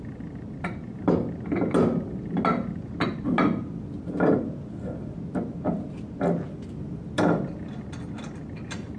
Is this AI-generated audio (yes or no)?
no